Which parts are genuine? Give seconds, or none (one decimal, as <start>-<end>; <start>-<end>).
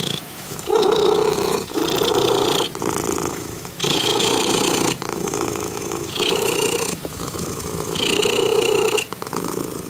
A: 1.8-3.3